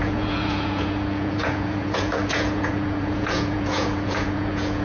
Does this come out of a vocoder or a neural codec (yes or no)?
yes